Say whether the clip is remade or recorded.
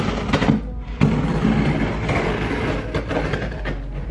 recorded